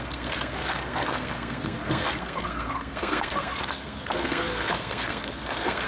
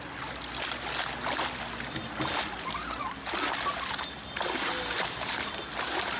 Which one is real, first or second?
second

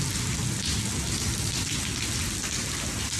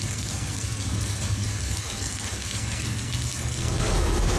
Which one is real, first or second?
first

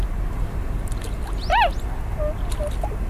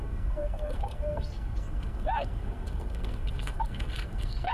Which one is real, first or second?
first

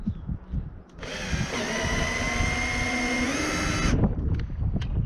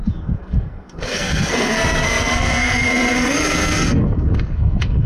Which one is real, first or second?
first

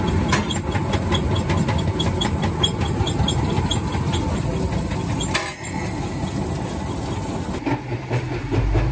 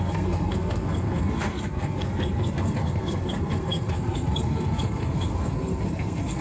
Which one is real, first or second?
first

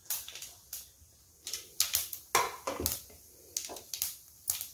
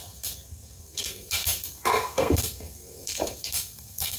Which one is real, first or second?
first